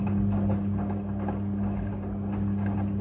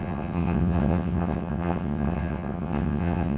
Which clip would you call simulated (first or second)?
second